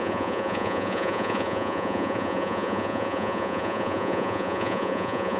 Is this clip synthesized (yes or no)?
yes